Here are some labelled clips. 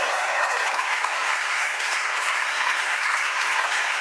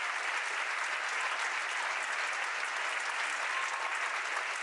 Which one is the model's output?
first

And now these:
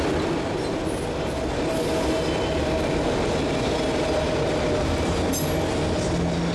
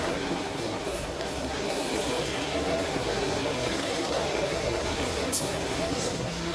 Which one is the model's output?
second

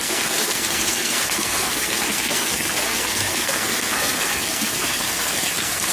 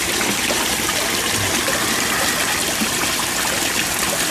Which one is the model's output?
first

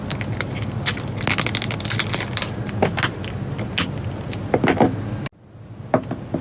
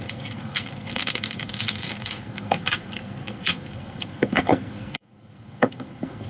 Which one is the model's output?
second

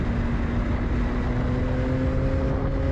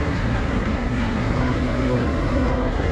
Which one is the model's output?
second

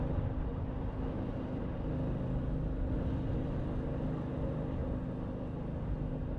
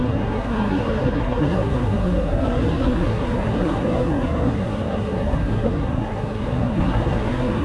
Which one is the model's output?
second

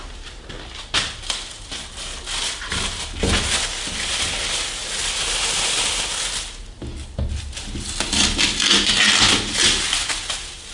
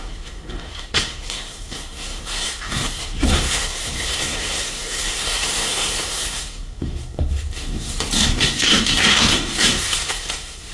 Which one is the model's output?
second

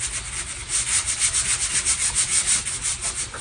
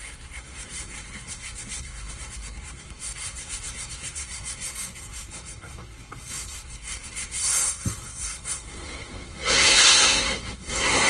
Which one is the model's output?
second